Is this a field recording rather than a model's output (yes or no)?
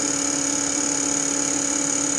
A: yes